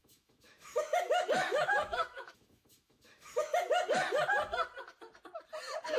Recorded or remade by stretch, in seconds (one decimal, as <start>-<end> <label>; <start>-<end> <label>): 0.0-3.6 remade; 3.6-6.0 recorded